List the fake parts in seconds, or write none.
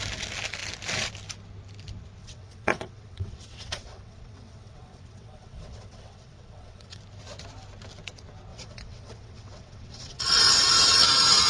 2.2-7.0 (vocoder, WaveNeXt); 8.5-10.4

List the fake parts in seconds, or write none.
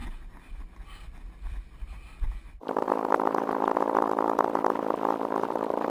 none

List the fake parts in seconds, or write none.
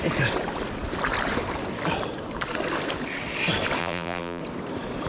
3.8-4.4 (vocoder, BigVGAN v2)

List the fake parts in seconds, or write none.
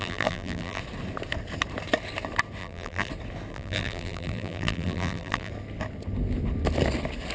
0.0-0.8 (vocoder, BigVGAN v2); 2.6-3.1; 3.5-5.5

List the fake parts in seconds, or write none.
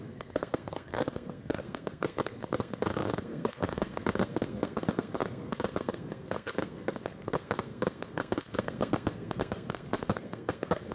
0.0-10.9 (codec, SNAC)